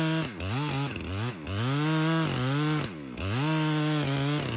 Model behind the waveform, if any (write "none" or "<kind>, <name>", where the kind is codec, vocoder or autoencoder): none